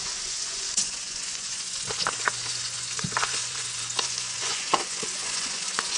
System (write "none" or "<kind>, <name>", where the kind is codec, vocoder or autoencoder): vocoder, Vocos